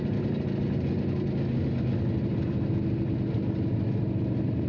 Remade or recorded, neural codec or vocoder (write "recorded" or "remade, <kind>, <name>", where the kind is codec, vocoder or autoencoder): recorded